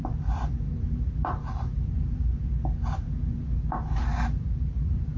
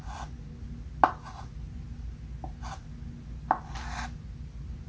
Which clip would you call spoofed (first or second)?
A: first